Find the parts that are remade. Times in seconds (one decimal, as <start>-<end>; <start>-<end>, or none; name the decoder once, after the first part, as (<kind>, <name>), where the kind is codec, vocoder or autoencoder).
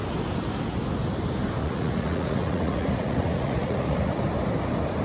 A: 1.6-4.2 (vocoder, Vocos)